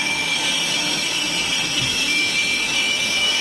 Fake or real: fake